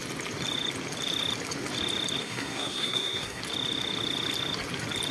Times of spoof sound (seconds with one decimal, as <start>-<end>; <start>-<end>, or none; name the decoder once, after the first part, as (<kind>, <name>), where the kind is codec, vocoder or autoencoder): 2.2-3.4 (codec, SNAC)